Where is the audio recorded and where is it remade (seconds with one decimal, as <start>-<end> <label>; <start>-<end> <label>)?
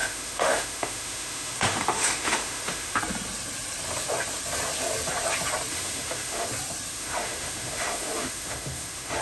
0.0-3.0 remade; 3.0-5.7 recorded; 5.7-6.5 remade; 6.5-6.9 recorded; 6.9-9.2 remade